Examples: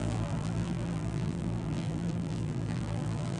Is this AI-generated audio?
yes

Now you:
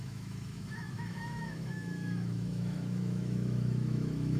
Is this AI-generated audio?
yes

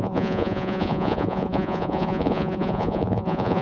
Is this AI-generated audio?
yes